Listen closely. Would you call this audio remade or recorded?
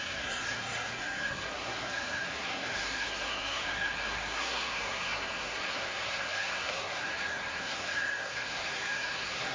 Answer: remade